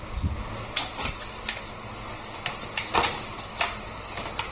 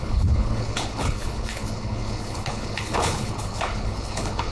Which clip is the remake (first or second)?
second